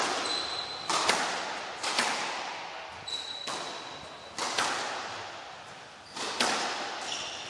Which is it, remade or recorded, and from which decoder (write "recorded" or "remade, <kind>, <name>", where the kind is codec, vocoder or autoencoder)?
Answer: recorded